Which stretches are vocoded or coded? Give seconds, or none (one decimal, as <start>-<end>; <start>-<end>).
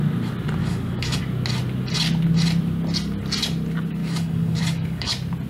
0.6-1.2; 4.0-5.1